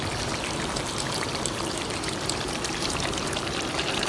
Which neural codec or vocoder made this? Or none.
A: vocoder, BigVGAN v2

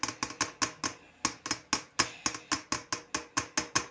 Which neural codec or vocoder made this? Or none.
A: none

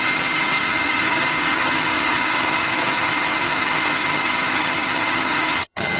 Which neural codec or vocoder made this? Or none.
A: vocoder, HiFi-GAN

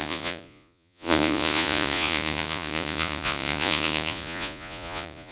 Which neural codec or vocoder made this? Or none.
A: vocoder, Vocos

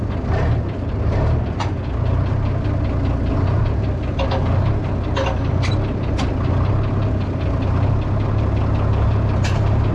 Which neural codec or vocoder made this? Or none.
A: none